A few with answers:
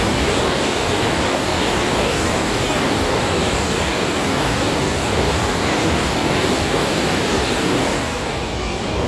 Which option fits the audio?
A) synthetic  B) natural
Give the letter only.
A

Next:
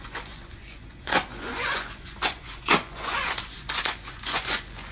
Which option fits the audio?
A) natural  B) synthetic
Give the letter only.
B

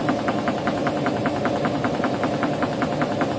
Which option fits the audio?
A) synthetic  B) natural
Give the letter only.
B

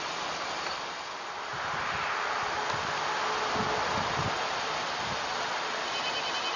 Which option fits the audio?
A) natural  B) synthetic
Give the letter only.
A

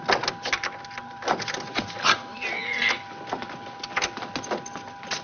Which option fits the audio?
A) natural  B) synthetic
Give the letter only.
A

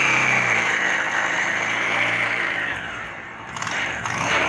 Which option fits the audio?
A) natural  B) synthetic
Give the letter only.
B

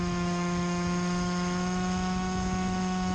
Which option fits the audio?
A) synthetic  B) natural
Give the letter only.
A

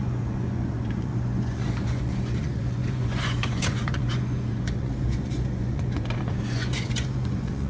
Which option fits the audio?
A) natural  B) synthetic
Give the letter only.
B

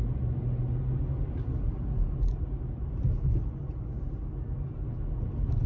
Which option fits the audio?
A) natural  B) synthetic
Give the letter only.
A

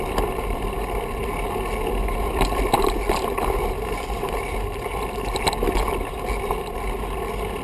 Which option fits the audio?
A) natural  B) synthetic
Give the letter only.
A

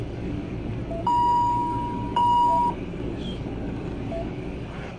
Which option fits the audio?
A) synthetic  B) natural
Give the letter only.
A